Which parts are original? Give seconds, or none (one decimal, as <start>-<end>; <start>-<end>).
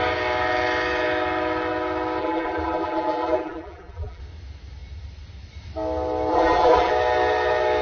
0.0-2.2; 4.2-6.3; 6.9-7.8